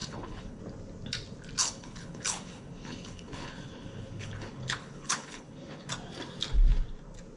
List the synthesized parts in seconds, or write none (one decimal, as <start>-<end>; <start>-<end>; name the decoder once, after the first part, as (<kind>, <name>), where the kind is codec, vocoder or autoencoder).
0.0-0.6 (codec, HILCodec); 1.6-5.9